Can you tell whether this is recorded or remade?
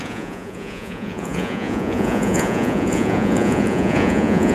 remade